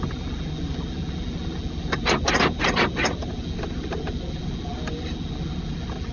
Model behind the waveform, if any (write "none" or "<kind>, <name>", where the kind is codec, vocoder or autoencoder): none